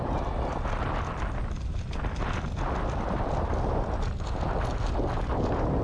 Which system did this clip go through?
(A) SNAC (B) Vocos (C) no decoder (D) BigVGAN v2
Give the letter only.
C